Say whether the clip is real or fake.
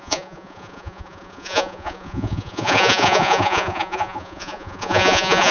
fake